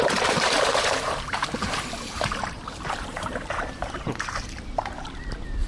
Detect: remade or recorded remade